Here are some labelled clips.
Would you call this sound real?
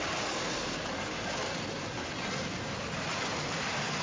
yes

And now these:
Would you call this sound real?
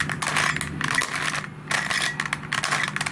yes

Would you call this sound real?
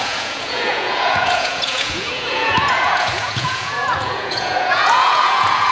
no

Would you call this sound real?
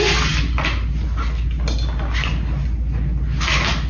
yes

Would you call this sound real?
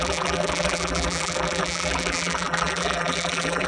no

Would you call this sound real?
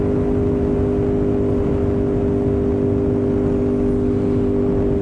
yes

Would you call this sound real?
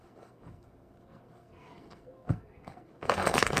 no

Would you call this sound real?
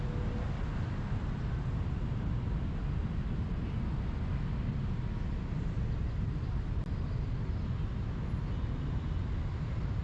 yes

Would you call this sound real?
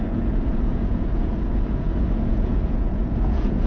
no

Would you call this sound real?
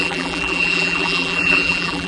no